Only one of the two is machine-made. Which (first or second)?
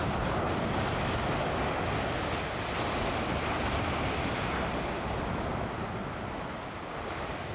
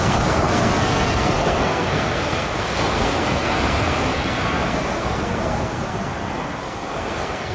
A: second